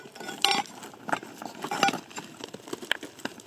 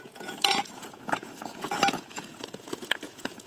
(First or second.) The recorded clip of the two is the first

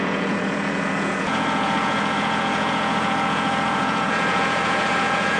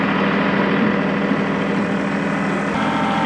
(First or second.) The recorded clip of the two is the second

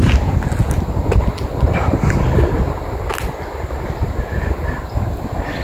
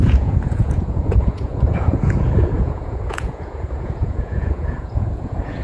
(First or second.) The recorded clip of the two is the first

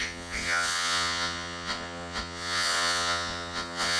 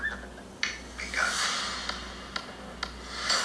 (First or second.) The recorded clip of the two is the second